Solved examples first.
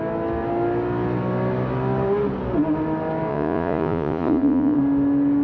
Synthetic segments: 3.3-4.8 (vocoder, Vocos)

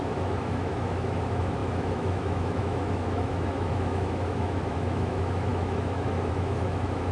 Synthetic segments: 0.0-7.1 (autoencoder, DAC-VAE)

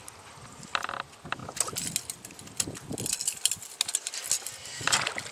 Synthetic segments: none

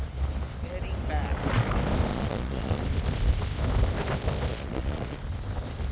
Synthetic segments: 2.1-2.8 (vocoder, Vocos); 4.5-5.2

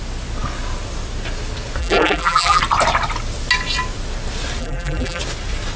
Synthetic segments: 1.8-2.6 (vocoder, BigVGAN v2); 4.6-5.2